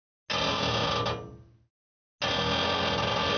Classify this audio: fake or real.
real